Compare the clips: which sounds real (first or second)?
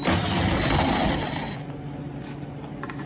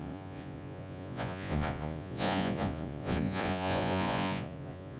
first